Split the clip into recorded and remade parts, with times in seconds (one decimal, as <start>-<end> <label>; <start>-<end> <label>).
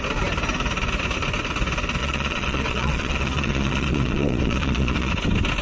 0.0-2.0 recorded; 2.0-5.1 remade; 5.1-5.6 recorded